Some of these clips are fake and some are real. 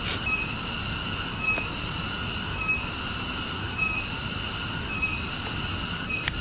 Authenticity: real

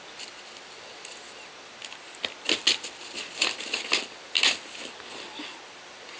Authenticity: real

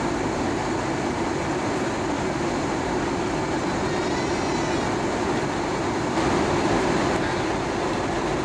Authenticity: real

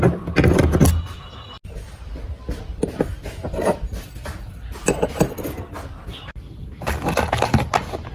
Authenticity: real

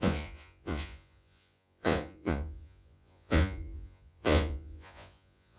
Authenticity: fake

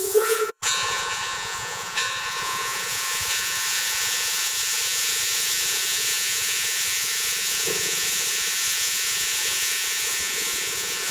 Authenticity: fake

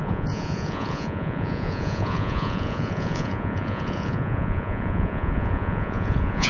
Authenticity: fake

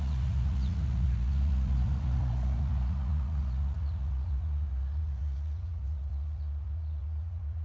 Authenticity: fake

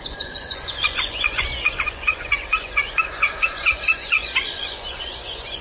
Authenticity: fake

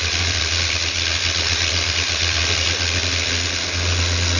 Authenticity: real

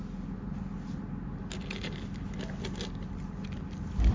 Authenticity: real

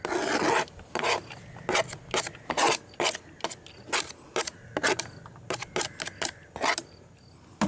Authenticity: real